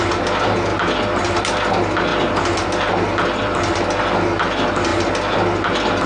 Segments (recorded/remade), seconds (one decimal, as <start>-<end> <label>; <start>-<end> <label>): 0.0-6.1 recorded